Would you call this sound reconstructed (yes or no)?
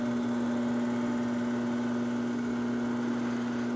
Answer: no